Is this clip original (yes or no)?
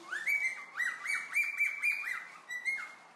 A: yes